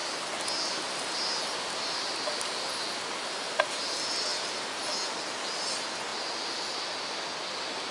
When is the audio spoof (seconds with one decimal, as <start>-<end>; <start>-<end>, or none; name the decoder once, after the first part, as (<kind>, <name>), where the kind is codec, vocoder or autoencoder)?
none